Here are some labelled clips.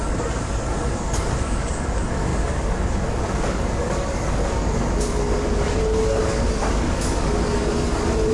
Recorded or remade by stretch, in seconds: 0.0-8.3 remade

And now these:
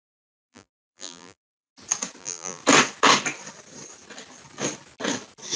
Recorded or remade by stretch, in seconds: 0.0-1.7 remade; 1.7-2.2 recorded; 2.2-2.6 remade; 2.6-5.6 recorded

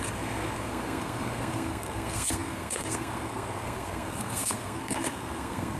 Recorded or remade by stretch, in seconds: 0.0-5.8 remade

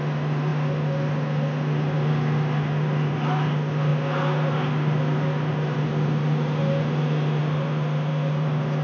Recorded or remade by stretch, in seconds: 0.0-8.8 recorded